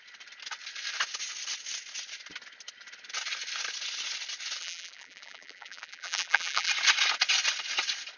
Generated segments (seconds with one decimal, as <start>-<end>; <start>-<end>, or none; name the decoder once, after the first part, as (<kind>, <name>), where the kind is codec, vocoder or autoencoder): 4.6-6.7 (vocoder, BigVGAN v2)